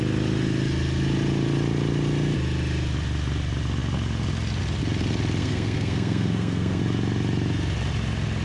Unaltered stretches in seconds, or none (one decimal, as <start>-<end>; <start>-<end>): 0.0-5.4; 6.8-8.4